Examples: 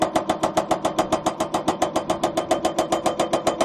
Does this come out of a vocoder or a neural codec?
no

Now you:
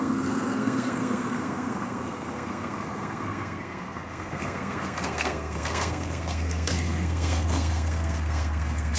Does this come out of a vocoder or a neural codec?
yes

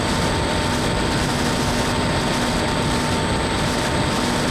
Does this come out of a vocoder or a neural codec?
no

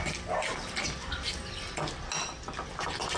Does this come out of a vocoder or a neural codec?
no